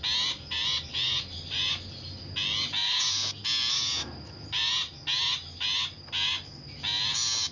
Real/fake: real